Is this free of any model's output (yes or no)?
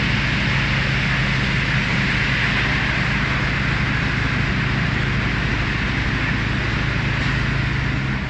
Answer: yes